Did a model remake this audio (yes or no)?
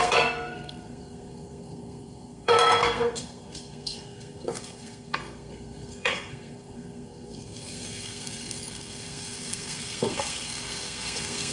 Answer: yes